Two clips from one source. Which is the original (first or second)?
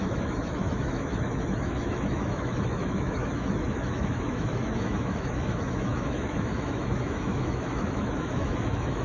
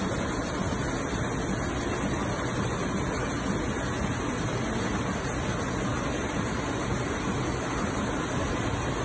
second